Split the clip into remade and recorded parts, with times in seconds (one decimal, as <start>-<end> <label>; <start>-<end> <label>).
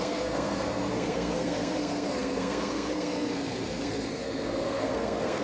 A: 0.0-5.4 remade